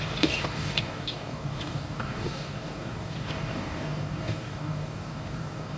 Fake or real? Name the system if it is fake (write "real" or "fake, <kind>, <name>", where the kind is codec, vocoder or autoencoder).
fake, codec, DAC